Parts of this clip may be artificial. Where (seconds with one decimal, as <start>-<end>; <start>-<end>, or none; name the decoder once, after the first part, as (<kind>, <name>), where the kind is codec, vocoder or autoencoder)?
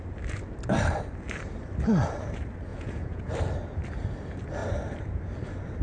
2.7-3.3 (vocoder, Vocos)